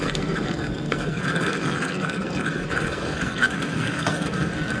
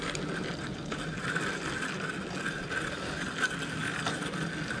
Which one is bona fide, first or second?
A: second